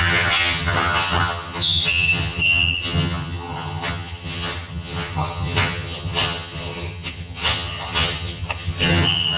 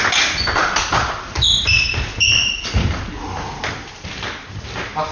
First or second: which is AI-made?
first